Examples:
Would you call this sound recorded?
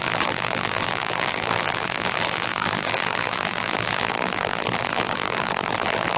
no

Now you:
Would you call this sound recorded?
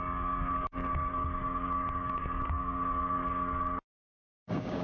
no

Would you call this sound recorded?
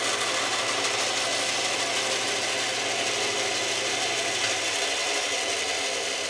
yes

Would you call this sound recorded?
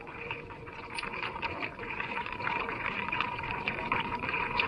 no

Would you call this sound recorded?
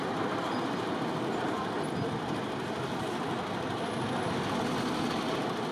yes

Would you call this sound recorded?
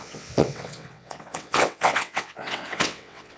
no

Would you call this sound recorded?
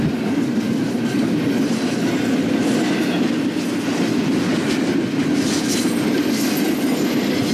yes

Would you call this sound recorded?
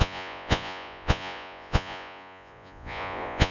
no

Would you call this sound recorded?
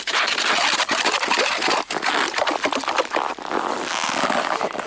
yes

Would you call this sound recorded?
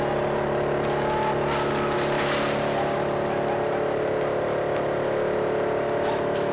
yes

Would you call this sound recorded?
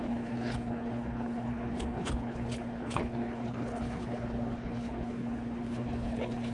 no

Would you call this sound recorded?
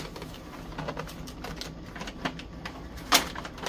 yes